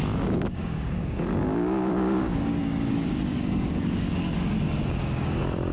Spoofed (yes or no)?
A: yes